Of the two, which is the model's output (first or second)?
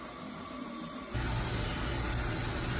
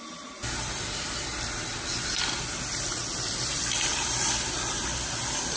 second